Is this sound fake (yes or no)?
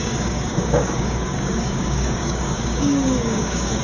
yes